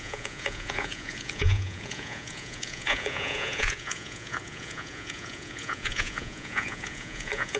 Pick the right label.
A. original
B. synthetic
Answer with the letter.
B